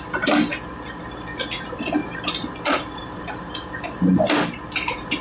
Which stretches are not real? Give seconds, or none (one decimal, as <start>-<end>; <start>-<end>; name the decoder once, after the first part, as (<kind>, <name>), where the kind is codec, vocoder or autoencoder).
0.5-1.0 (vocoder, BigVGAN v2); 2.0-5.2